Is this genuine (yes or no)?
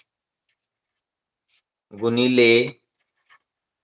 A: yes